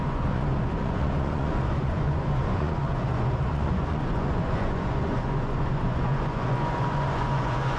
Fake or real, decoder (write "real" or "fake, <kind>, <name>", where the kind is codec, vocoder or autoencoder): fake, vocoder, Vocos